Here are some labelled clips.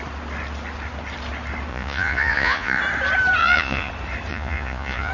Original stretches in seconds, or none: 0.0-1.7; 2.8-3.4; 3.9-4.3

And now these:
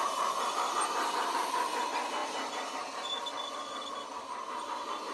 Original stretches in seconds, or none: 0.0-5.1